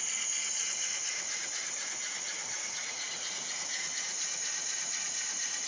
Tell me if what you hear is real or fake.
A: fake